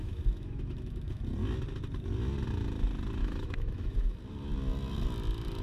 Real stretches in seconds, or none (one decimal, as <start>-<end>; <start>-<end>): 1.2-3.2; 4.2-5.6